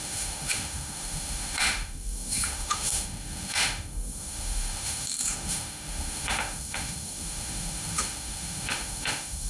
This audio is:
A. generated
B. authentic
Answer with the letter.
A